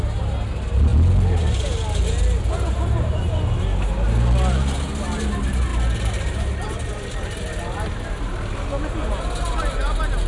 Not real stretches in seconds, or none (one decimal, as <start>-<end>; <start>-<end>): none